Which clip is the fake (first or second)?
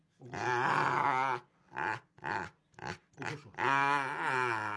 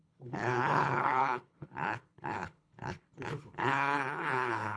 second